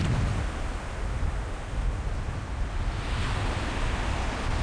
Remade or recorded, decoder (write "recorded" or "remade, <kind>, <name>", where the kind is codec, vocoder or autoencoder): recorded